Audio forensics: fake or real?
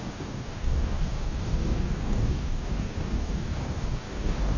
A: fake